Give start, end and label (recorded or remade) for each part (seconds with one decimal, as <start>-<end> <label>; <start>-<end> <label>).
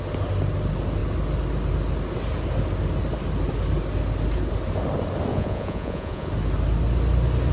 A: 0.0-5.3 recorded; 5.3-6.3 remade; 6.3-7.5 recorded